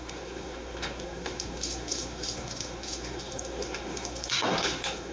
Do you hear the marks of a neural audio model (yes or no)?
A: yes